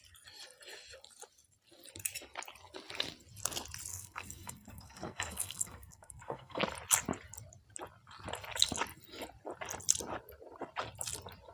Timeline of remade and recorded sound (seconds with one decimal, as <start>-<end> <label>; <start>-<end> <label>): 0.0-3.9 recorded; 3.9-6.6 remade; 6.6-11.5 recorded